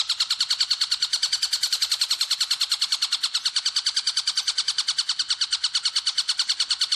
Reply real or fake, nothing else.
real